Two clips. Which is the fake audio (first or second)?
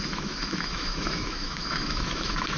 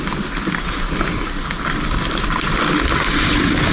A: first